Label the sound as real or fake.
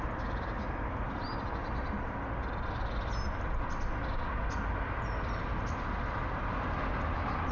real